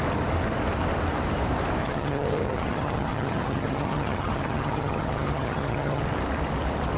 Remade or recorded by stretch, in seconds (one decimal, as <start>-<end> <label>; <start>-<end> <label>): 0.0-1.8 recorded; 1.8-6.0 remade; 6.0-7.0 recorded

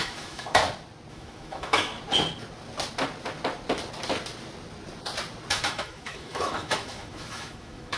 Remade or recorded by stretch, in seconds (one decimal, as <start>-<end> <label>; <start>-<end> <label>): 0.0-0.6 remade; 0.6-1.1 recorded; 1.1-1.9 remade; 1.9-5.5 recorded; 5.5-8.0 remade

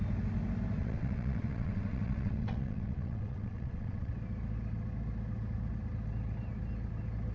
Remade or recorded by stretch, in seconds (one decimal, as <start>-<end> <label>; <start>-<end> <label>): 0.0-0.8 recorded; 0.8-4.1 remade; 4.1-7.3 recorded

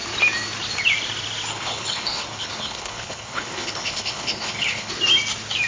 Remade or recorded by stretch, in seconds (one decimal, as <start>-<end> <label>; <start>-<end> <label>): 0.0-1.5 recorded; 1.5-4.9 remade; 4.9-5.7 recorded

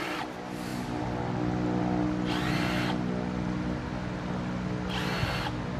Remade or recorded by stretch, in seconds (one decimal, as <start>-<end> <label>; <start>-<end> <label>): 0.0-5.8 recorded

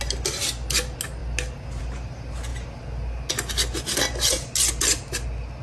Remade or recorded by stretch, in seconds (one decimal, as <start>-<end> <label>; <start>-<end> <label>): 0.0-5.6 recorded

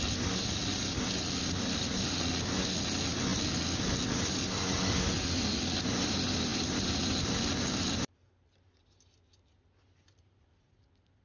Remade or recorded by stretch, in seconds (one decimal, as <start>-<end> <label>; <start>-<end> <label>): 0.0-11.2 recorded